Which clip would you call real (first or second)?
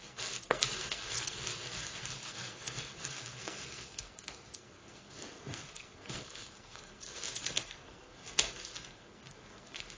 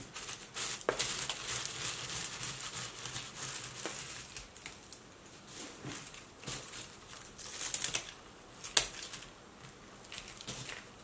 second